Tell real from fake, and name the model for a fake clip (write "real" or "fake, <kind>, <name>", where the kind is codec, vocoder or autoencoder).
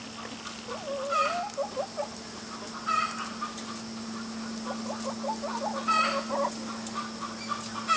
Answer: real